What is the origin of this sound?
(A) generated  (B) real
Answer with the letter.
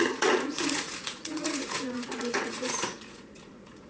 A